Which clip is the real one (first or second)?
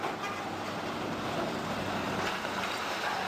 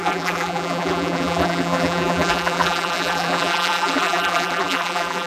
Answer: first